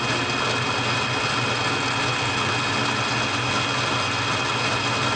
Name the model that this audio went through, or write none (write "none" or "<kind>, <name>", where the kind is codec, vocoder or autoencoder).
none